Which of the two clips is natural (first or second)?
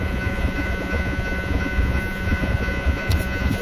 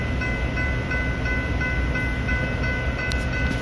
second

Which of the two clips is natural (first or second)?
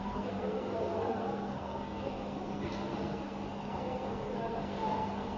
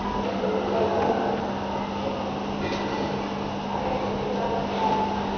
second